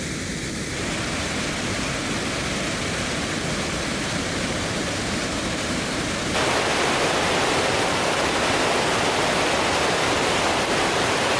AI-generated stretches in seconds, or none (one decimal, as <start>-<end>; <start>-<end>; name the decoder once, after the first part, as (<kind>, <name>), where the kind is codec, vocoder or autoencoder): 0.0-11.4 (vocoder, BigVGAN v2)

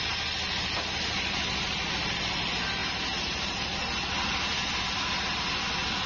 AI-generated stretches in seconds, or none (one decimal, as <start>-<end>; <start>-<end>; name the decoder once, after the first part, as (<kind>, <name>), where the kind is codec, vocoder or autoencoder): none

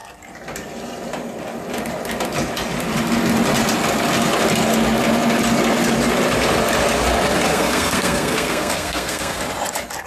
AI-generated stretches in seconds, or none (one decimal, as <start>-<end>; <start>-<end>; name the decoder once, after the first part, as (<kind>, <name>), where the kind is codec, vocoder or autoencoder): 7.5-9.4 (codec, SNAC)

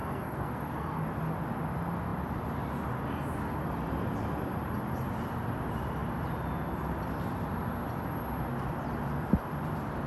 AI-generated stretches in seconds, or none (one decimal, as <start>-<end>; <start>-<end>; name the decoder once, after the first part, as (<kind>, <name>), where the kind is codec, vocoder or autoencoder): 0.0-1.0 (codec, SNAC)

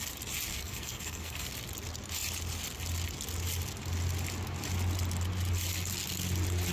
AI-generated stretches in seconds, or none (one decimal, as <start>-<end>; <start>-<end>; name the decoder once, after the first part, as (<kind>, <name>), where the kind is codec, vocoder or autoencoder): 0.5-1.5 (codec, SNAC)

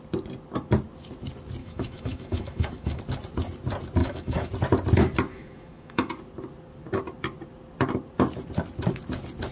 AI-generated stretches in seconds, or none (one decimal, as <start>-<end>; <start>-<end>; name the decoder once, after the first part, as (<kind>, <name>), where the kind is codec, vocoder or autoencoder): 1.6-3.0 (autoencoder, DAC-VAE); 4.0-4.5; 5.3-6.1

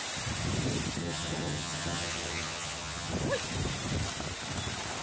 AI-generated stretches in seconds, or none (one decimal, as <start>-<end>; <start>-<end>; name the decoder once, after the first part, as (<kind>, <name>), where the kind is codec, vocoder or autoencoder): 1.0-3.1 (vocoder, HiFi-GAN)

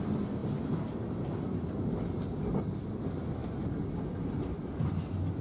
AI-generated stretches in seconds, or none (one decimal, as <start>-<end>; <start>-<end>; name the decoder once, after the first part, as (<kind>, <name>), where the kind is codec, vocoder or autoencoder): none